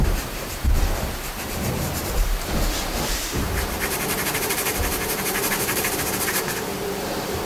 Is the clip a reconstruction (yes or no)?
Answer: yes